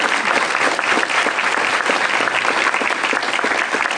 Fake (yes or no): yes